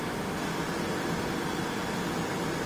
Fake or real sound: real